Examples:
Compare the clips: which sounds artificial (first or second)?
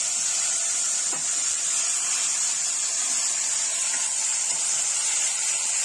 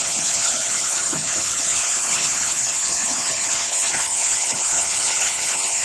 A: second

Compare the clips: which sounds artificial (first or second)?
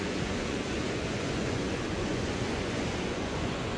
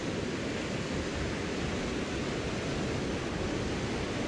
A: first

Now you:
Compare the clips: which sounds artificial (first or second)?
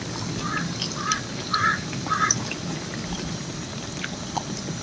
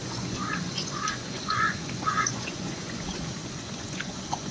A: second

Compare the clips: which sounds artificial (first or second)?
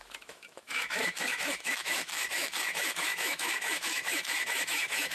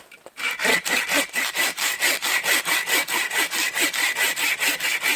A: first